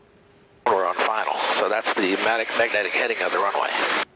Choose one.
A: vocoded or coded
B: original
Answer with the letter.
B